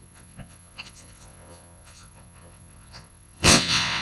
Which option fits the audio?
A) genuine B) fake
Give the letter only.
B